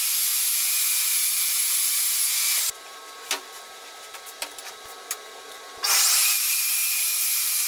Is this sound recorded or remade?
remade